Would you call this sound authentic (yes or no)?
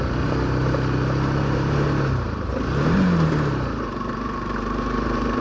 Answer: no